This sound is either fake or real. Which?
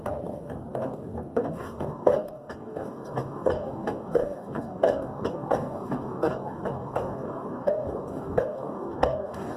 fake